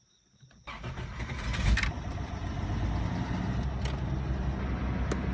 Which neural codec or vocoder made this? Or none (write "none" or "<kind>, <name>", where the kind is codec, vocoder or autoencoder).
none